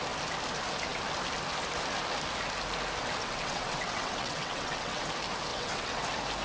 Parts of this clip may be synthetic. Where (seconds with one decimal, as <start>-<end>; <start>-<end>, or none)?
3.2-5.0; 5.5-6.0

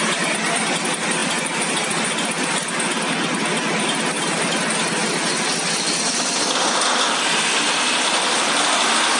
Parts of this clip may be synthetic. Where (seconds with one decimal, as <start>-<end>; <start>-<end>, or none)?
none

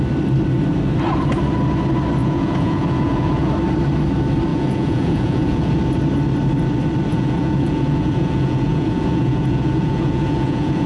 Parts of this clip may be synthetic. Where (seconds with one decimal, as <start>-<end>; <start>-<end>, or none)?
2.2-3.5; 4.5-5.7; 7.1-10.9

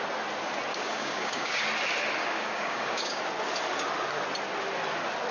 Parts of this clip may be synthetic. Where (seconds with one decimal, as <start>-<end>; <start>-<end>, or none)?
0.7-1.6; 2.2-3.2

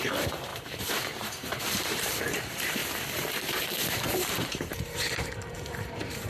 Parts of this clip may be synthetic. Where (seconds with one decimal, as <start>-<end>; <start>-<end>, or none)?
0.0-2.8; 3.9-6.3

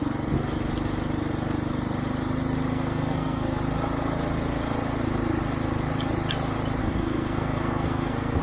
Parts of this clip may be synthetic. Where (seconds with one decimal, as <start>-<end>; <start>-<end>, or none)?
2.7-3.6; 6.8-8.4